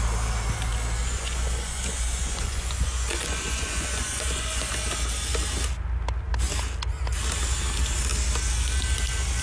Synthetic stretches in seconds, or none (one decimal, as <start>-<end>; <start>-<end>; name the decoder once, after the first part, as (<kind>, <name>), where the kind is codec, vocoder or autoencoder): 1.0-4.7 (vocoder, Vocos)